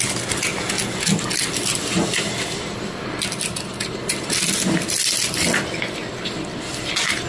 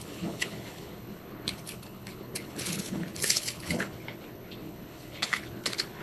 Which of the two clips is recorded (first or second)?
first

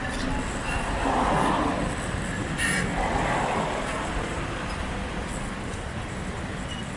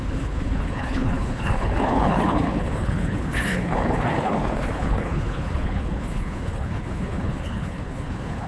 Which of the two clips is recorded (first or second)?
first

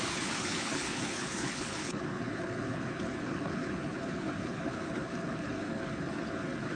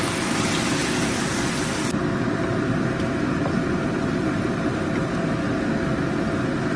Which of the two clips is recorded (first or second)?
second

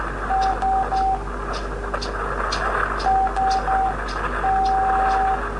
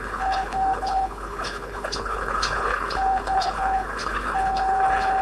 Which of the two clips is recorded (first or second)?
first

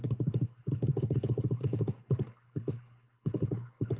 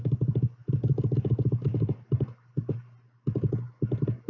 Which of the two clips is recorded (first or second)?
second